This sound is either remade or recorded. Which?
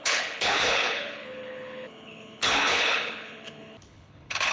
remade